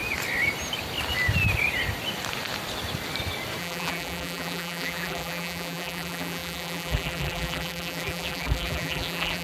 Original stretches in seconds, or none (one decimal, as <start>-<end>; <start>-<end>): 0.0-3.6